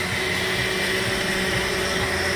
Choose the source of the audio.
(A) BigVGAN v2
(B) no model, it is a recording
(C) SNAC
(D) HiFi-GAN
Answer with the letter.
B